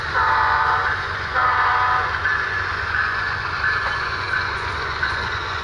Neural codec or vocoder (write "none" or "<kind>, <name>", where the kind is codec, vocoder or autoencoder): vocoder, Vocos